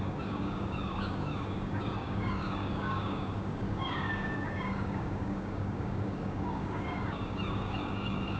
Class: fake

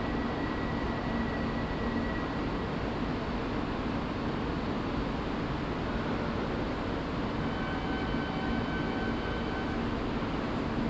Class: real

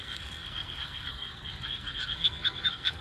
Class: fake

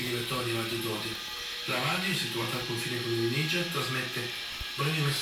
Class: real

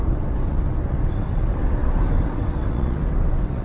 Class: fake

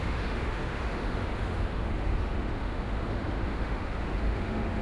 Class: fake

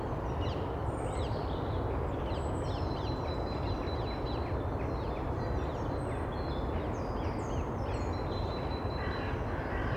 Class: real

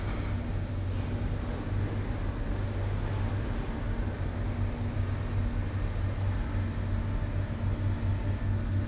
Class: real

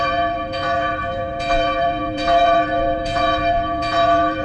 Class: fake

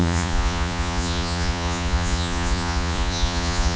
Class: fake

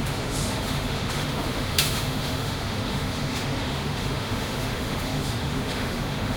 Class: fake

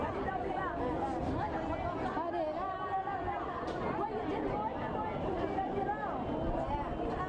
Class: real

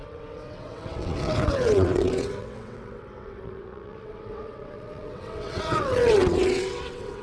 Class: fake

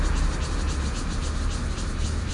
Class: real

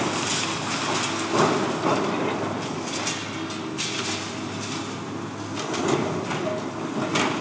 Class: real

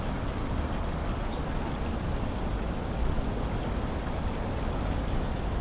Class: real